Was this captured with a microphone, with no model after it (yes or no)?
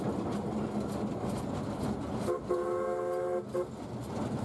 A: yes